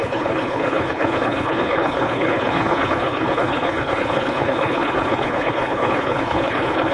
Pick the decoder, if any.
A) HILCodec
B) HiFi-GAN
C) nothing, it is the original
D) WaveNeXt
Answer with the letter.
A